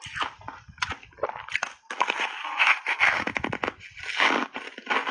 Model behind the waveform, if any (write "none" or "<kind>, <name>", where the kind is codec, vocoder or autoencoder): none